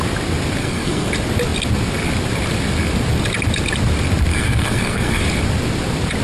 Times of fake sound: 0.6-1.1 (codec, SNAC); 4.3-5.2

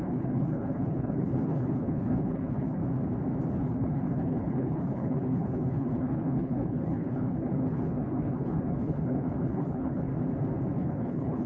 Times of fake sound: 0.0-2.8 (codec, HILCodec); 3.5-10.1; 10.8-11.5

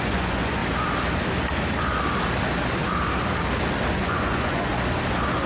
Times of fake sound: 0.0-0.6 (vocoder, Vocos); 3.9-4.7

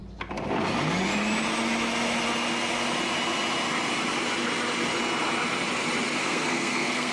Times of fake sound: 6.2-7.1 (codec, SNAC)

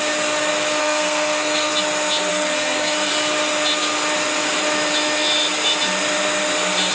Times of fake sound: 0.8-1.7 (codec, SNAC); 2.3-3.1

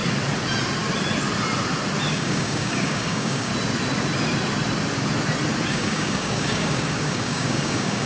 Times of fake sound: 2.1-3.5 (codec, DAC); 5.7-8.1